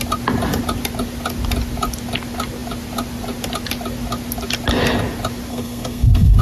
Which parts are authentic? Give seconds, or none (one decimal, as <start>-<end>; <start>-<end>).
0.0-5.5